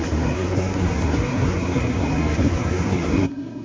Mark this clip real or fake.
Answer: fake